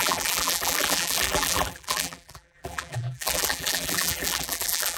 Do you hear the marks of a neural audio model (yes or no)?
yes